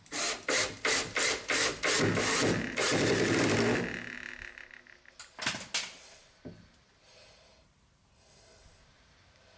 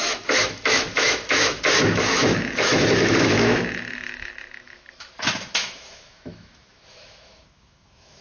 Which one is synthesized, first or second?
second